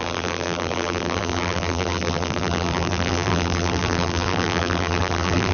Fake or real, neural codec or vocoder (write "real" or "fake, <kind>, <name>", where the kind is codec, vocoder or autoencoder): fake, vocoder, BigVGAN v2